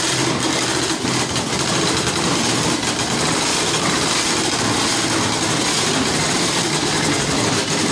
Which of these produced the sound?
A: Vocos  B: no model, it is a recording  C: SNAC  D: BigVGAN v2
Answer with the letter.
B